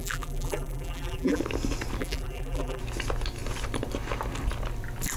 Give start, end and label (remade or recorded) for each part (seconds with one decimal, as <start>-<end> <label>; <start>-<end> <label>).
0.0-1.4 remade; 1.4-2.0 recorded; 2.0-2.8 remade; 2.8-5.2 recorded